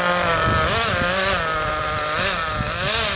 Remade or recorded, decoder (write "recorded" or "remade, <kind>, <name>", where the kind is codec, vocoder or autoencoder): recorded